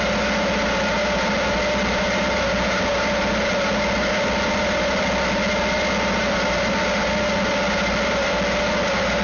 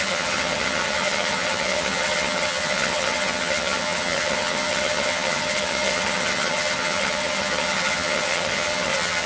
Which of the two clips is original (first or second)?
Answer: first